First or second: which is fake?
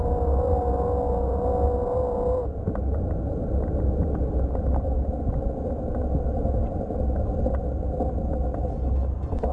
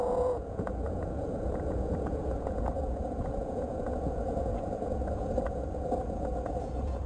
second